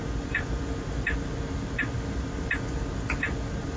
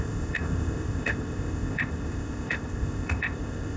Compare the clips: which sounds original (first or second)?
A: first